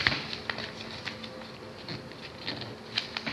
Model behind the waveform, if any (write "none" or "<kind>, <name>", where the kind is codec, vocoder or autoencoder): none